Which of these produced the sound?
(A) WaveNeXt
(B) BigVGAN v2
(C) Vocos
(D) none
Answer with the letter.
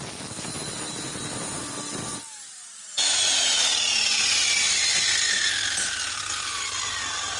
D